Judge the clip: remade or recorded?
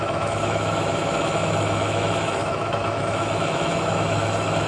remade